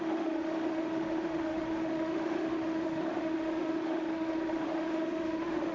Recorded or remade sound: remade